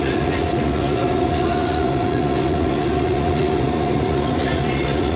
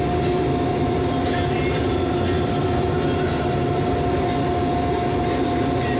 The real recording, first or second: second